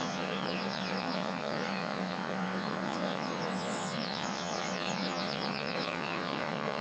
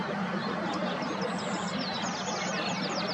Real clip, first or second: second